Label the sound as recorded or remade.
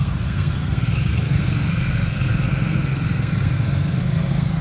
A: remade